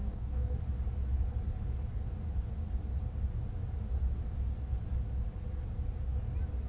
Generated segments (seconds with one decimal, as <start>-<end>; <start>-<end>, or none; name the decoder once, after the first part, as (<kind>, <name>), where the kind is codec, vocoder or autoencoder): 0.0-0.6 (codec, DAC)